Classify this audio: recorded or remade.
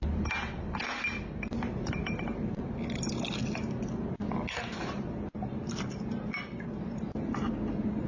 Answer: recorded